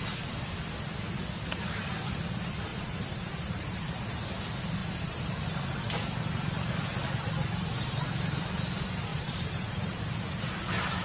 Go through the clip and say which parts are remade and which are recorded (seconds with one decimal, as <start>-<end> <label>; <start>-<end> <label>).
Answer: 0.0-2.7 recorded; 2.7-3.9 remade; 3.9-4.8 recorded; 4.8-5.4 remade; 5.4-9.1 recorded; 9.1-10.0 remade; 10.0-11.0 recorded